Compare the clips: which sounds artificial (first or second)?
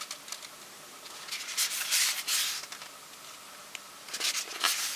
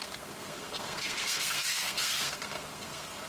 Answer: second